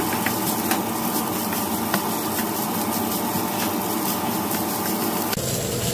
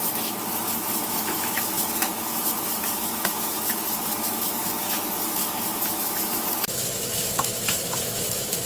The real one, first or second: first